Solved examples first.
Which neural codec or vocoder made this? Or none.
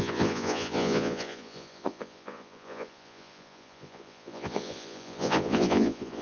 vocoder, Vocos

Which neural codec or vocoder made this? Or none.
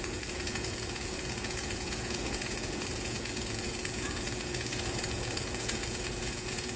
vocoder, Vocos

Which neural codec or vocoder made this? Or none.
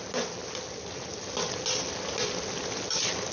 none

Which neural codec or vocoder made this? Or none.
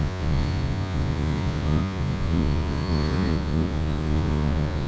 vocoder, Vocos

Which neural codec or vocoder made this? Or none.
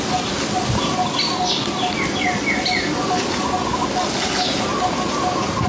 none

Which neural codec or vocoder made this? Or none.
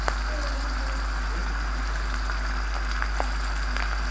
none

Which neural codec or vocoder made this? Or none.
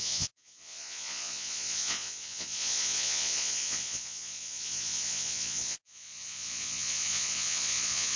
vocoder, Vocos